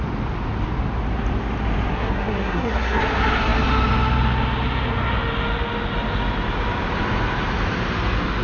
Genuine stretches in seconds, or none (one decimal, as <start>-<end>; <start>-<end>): 0.0-1.9; 3.0-8.4